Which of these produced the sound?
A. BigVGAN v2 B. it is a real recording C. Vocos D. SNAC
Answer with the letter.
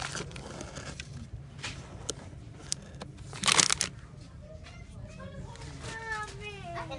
B